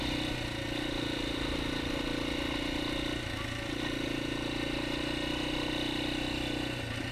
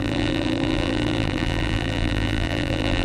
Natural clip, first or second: first